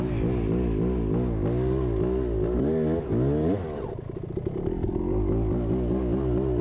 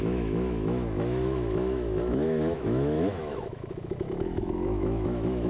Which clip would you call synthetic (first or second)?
second